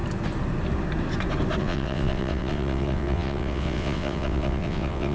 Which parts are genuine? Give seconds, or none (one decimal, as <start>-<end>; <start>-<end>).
0.0-1.6